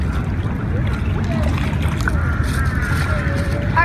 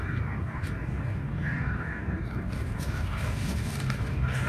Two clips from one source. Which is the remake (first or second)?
second